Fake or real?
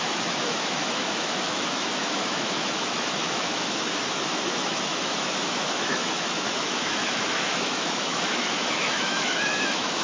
fake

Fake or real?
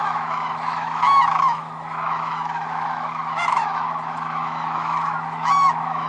fake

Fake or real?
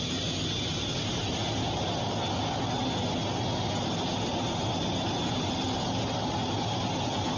real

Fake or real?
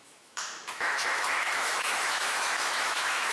fake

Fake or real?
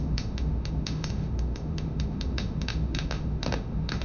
fake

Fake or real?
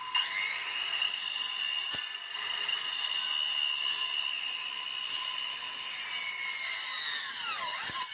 real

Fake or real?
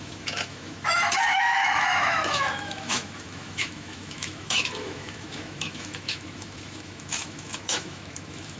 fake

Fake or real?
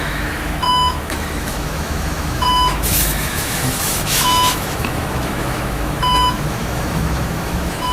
fake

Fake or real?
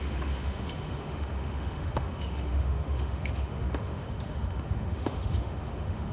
fake